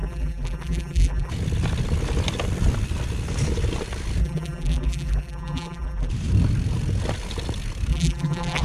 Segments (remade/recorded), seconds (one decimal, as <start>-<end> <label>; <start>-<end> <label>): 0.0-1.3 remade; 1.3-4.2 recorded; 4.2-6.1 remade; 6.1-7.9 recorded; 7.9-8.6 remade